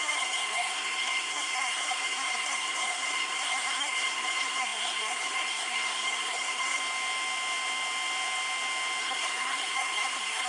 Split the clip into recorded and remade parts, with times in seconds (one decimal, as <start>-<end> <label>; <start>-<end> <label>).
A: 0.0-6.8 remade; 6.8-9.0 recorded; 9.0-10.5 remade